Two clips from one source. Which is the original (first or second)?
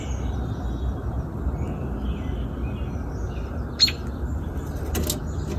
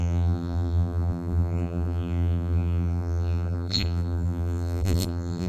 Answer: first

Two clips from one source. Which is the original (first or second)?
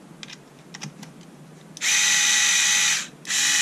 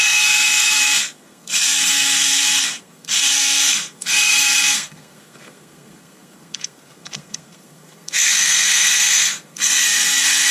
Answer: first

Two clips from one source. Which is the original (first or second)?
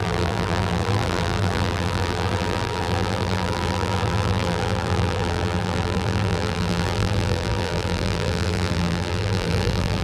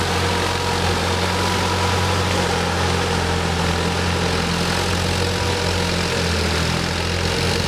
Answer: second